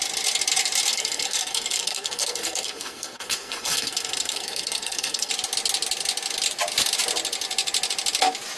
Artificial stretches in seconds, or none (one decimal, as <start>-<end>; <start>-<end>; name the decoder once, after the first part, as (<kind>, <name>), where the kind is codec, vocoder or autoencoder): 0.9-5.3 (codec, SNAC)